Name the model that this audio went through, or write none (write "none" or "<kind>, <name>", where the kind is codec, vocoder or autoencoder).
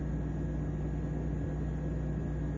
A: none